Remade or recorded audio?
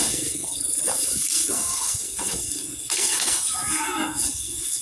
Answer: remade